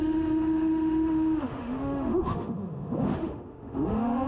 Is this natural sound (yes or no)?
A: no